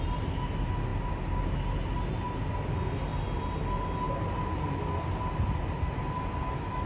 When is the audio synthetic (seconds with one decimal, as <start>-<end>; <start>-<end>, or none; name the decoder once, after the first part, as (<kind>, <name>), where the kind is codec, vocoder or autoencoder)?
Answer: none